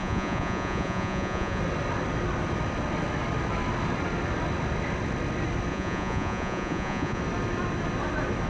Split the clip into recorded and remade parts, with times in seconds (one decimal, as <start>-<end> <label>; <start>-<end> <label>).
0.0-1.6 remade; 1.6-5.7 recorded; 5.7-7.2 remade; 7.2-8.5 recorded